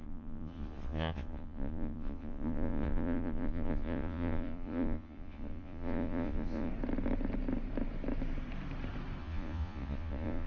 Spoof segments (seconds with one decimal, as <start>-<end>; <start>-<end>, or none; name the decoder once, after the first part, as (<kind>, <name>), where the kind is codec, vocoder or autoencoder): 0.0-6.7 (vocoder, Vocos); 9.2-10.5